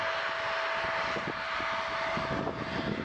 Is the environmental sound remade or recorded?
recorded